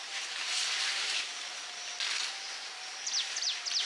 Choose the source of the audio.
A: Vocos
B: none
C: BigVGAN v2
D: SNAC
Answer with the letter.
B